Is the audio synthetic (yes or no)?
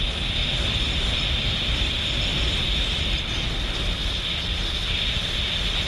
no